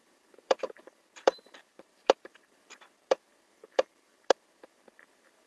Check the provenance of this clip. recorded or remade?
remade